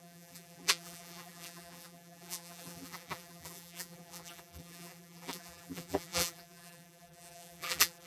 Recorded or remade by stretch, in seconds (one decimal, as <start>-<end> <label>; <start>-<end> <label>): 0.0-8.1 remade